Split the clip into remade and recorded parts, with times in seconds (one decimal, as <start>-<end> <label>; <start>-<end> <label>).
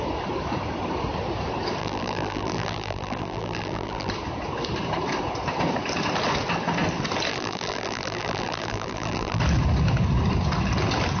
0.0-1.8 recorded; 1.8-4.1 remade; 4.1-7.3 recorded; 7.3-9.4 remade; 9.4-11.2 recorded